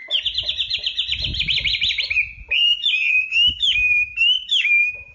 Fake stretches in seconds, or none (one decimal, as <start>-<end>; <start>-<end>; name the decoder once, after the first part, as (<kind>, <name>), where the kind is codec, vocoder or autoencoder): 3.1-5.1 (autoencoder, DAC-VAE)